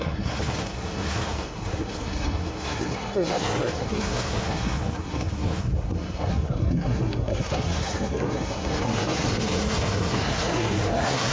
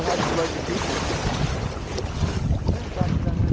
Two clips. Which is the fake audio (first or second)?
first